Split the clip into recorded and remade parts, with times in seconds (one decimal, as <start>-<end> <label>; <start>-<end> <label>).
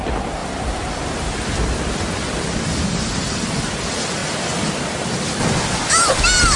0.0-0.4 recorded; 0.4-3.8 remade; 3.8-4.2 recorded; 4.2-5.8 remade; 5.8-6.6 recorded